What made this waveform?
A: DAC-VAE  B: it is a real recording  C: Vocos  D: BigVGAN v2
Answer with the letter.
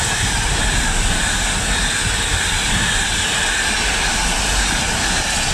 B